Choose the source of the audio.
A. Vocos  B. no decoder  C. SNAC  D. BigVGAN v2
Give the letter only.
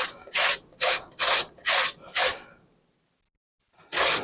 B